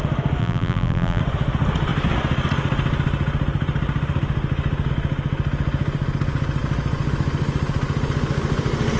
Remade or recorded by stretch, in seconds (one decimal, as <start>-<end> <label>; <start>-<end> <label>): 0.0-0.4 recorded; 0.4-1.2 remade; 1.2-9.0 recorded

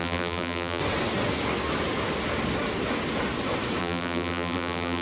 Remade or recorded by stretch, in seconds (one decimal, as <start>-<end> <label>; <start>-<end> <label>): 0.0-0.8 remade; 0.8-3.8 recorded; 3.8-5.0 remade

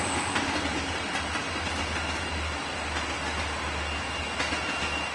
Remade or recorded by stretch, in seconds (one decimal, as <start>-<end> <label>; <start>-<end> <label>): 0.0-1.4 remade; 1.4-4.5 recorded; 4.5-5.1 remade